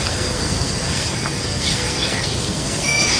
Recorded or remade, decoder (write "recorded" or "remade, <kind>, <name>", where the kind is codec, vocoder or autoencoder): remade, codec, SNAC